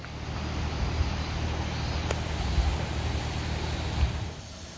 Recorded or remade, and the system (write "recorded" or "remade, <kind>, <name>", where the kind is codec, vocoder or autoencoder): recorded